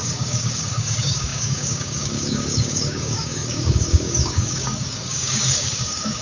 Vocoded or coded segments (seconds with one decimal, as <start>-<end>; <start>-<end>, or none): 0.0-6.2